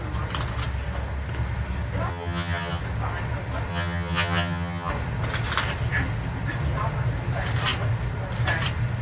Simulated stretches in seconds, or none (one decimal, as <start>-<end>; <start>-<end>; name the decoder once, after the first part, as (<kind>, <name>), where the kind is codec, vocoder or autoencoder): 2.1-2.8 (vocoder, HiFi-GAN); 3.7-4.9